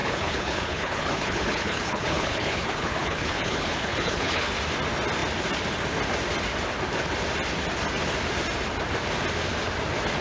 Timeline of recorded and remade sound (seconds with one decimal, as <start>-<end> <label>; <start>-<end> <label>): 0.0-4.5 remade; 4.5-10.2 recorded